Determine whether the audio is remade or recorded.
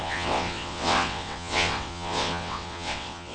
remade